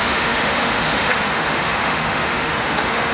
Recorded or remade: remade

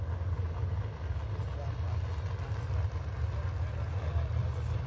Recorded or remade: recorded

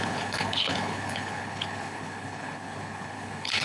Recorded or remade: remade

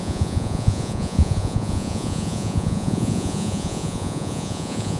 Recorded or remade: remade